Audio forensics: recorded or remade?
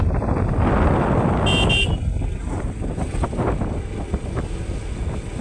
recorded